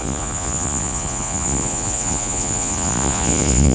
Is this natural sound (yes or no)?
no